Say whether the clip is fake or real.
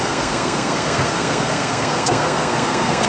fake